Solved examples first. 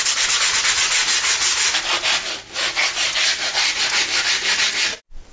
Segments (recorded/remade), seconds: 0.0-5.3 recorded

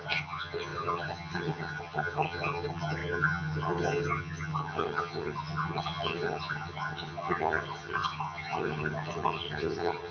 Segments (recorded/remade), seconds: 0.0-10.1 remade

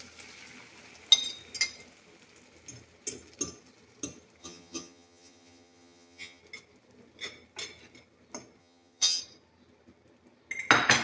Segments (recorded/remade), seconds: 0.0-4.4 recorded; 4.4-6.4 remade; 6.4-8.6 recorded; 8.6-9.2 remade; 9.2-11.0 recorded

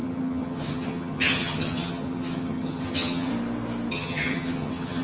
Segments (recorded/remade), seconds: 0.0-3.3 remade; 3.3-3.9 recorded; 3.9-5.0 remade

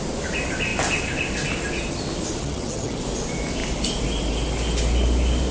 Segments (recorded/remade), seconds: 0.0-2.4 recorded; 2.4-3.0 remade; 3.0-5.5 recorded

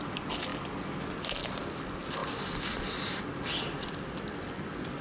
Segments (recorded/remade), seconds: 0.0-5.0 recorded